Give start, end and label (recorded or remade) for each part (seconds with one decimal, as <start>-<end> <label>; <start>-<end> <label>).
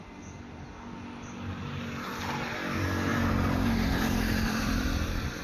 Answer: 0.0-3.1 recorded; 3.1-5.4 remade